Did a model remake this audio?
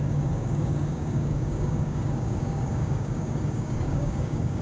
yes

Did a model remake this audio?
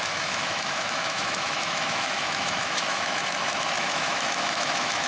yes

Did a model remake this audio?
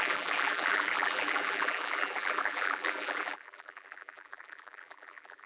yes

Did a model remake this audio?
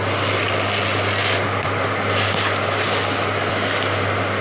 no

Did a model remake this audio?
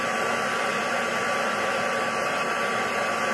no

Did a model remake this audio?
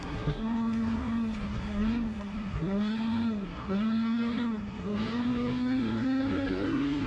yes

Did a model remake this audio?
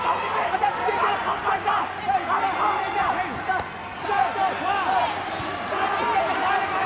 no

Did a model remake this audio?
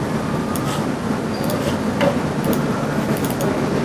no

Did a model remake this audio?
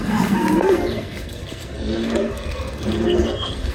yes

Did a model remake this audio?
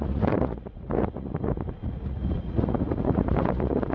yes